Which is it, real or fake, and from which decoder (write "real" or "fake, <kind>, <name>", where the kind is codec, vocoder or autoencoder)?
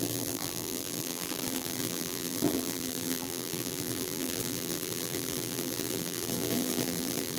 fake, vocoder, BigVGAN v2